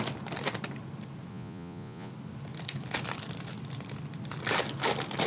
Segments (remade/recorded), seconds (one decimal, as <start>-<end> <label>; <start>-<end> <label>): 0.0-1.3 recorded; 1.3-2.1 remade; 2.1-5.3 recorded